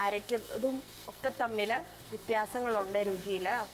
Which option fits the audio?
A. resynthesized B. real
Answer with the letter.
A